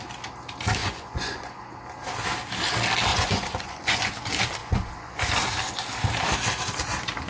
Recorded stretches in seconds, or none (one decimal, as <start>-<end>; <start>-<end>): 0.0-0.8; 1.6-3.1; 4.1-4.6; 5.2-7.3